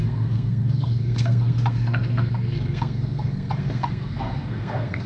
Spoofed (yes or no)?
yes